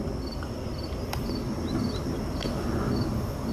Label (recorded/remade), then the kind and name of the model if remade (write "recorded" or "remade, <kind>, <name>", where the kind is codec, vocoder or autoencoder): recorded